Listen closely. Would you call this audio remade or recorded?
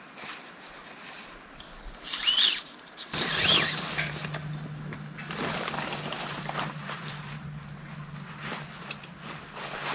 recorded